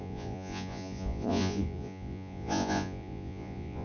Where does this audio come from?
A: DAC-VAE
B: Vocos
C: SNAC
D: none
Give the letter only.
B